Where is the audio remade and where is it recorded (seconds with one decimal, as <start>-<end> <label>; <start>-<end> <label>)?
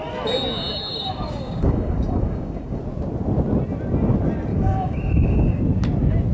0.0-0.9 recorded; 0.9-2.8 remade; 2.8-4.5 recorded; 4.5-5.6 remade; 5.6-6.3 recorded